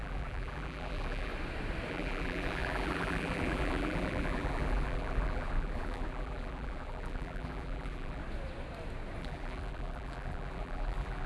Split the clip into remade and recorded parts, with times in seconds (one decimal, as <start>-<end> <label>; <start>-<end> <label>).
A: 0.0-1.3 remade; 1.3-1.9 recorded; 1.9-8.2 remade; 8.2-9.2 recorded; 9.2-11.3 remade